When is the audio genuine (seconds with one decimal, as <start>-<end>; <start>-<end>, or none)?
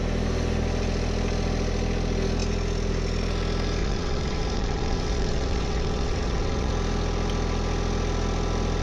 0.0-3.8; 6.7-8.8